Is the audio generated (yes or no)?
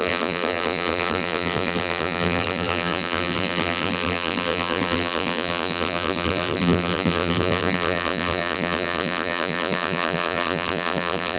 yes